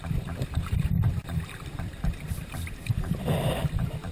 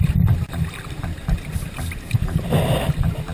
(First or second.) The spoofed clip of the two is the first